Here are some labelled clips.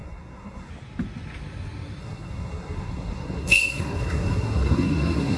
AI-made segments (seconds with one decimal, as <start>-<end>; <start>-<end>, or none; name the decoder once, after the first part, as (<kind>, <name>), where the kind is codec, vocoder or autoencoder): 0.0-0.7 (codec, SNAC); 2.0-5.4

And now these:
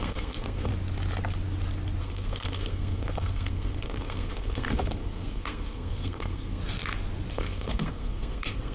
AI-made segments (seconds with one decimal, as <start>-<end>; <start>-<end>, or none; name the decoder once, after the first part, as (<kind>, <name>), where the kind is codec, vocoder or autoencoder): 0.0-0.7 (codec, SNAC); 2.0-6.6; 7.3-8.7

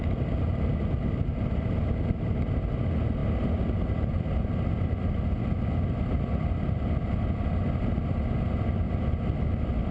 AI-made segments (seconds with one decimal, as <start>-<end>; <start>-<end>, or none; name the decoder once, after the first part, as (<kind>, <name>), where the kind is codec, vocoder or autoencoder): none

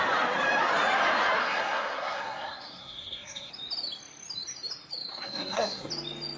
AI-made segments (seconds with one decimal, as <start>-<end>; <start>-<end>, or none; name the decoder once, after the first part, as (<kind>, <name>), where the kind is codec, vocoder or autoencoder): 1.4-3.5 (codec, SNAC); 5.1-5.9

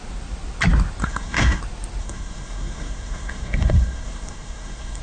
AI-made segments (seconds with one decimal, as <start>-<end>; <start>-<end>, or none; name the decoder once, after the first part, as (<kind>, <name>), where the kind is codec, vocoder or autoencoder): 1.0-1.6 (codec, SNAC); 2.0-5.0